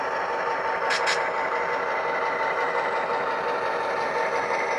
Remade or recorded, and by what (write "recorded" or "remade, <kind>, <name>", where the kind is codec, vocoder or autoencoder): recorded